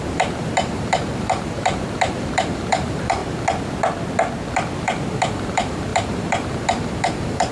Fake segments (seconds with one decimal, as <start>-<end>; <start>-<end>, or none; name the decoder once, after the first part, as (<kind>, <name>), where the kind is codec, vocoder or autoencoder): 0.0-3.2 (vocoder, BigVGAN v2); 4.8-7.5